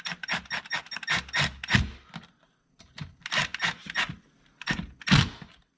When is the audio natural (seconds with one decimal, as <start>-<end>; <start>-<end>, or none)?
0.0-5.8